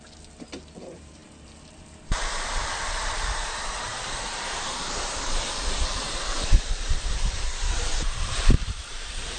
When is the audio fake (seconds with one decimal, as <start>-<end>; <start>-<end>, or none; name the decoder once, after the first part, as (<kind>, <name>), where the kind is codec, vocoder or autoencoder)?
0.0-9.4 (vocoder, BigVGAN v2)